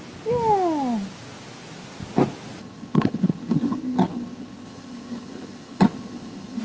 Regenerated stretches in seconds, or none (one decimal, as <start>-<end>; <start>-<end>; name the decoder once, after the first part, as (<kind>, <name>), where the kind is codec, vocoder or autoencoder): 2.6-6.6 (vocoder, HiFi-GAN)